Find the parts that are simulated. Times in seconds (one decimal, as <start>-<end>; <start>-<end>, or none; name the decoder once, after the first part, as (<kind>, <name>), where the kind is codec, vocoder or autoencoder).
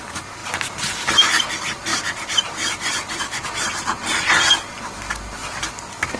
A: 1.9-4.1 (vocoder, BigVGAN v2); 5.4-6.2